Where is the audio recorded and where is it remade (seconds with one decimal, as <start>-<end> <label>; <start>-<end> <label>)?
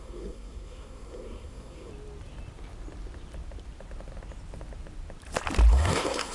0.0-1.9 remade; 1.9-5.7 recorded; 5.7-6.3 remade